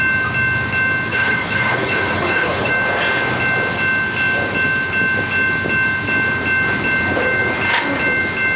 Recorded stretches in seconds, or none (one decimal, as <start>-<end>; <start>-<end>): 0.0-1.1; 2.7-8.6

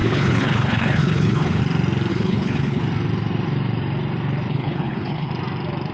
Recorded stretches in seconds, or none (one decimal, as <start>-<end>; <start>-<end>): 1.6-2.1; 2.8-4.5; 5.3-5.9